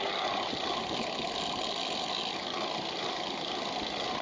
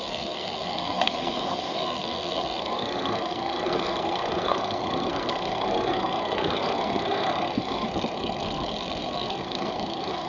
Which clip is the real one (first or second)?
first